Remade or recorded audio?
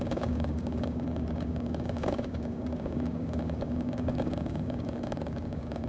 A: remade